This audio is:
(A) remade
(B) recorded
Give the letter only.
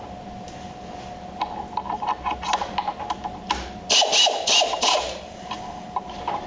B